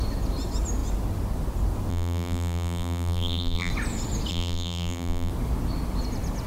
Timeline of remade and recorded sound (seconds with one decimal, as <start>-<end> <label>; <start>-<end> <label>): 0.0-1.9 recorded; 1.9-3.7 remade; 3.7-4.3 recorded; 4.3-5.3 remade; 5.3-6.5 recorded